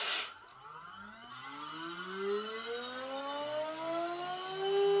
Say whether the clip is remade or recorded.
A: recorded